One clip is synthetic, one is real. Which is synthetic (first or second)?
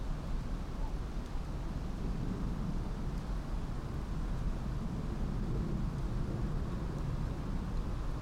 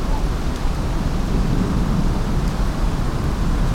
second